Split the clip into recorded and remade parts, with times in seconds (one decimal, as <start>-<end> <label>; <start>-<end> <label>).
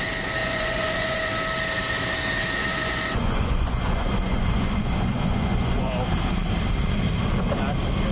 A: 0.0-0.4 recorded; 0.4-1.3 remade; 1.3-2.7 recorded; 2.7-5.9 remade; 5.9-8.1 recorded